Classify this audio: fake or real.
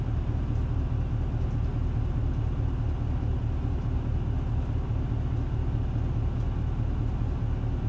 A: real